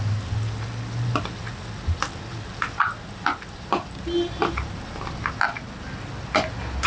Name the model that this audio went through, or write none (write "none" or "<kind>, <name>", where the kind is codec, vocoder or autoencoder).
none